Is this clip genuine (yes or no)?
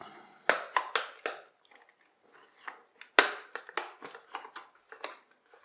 yes